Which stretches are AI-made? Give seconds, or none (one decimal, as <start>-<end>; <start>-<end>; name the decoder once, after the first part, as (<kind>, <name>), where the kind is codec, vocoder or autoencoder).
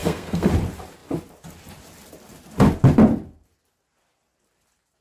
0.0-0.5 (codec, SNAC)